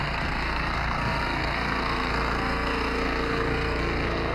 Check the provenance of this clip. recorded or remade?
remade